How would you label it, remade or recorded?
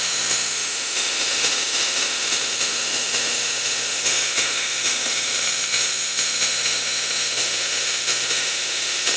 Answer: remade